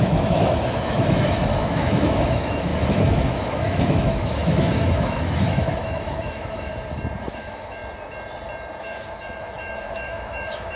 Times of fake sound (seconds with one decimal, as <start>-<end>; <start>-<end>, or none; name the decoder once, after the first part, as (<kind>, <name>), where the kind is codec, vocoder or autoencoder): 0.0-6.7 (autoencoder, DAC-VAE); 7.3-7.8; 8.8-10.8